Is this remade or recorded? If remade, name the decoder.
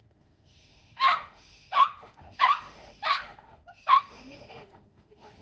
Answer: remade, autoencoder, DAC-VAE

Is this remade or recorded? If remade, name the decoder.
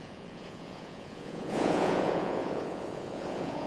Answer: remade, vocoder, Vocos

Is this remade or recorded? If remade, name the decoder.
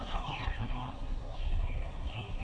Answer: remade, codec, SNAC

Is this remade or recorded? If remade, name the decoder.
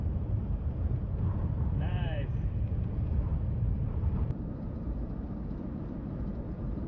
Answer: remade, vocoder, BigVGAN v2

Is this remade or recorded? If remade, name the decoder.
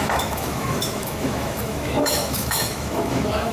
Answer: remade, autoencoder, DAC-VAE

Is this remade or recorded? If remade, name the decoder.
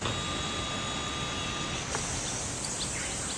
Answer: recorded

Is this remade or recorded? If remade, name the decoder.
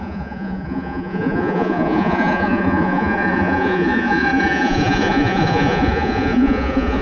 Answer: remade, vocoder, Vocos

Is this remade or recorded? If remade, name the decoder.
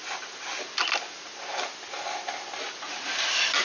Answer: recorded